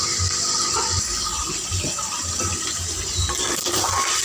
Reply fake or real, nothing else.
fake